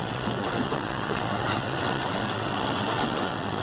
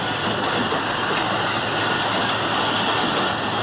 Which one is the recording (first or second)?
second